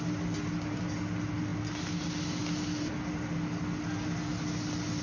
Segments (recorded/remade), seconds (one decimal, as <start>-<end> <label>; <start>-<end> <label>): 0.0-5.0 recorded